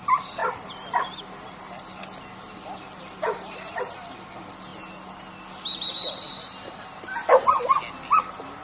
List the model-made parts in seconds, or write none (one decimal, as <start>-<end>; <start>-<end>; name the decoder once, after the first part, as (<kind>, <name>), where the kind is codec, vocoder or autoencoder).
none